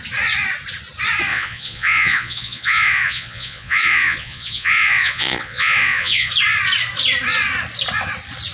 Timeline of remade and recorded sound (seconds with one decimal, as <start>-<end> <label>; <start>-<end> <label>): 0.0-1.3 recorded; 1.3-6.3 remade; 6.3-8.5 recorded